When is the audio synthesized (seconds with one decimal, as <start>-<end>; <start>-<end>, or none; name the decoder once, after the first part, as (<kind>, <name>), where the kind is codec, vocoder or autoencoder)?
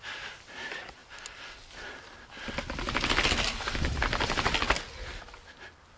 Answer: none